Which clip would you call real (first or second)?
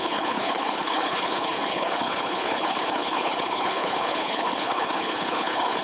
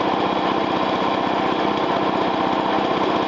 second